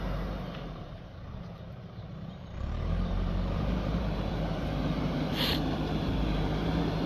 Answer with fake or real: fake